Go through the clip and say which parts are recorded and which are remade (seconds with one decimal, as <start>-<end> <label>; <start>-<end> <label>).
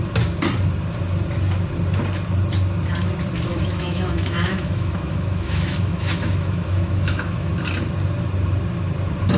0.0-3.5 recorded; 3.5-7.5 remade; 7.5-9.4 recorded